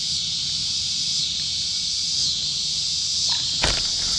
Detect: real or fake real